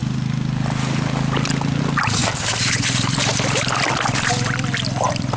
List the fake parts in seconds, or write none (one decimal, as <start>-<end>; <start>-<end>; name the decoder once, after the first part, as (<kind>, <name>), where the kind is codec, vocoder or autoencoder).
2.2-5.4 (vocoder, BigVGAN v2)